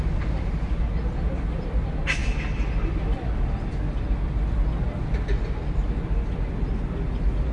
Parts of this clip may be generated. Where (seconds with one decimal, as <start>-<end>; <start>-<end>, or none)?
none